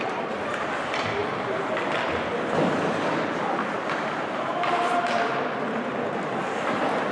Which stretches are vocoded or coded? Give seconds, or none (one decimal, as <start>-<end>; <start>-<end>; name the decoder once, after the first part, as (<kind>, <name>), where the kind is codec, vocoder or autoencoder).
0.0-7.1 (vocoder, BigVGAN v2)